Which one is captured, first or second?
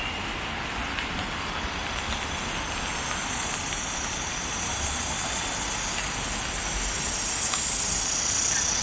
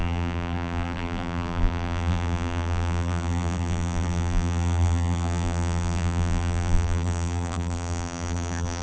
first